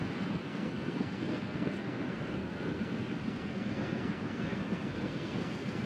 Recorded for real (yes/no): no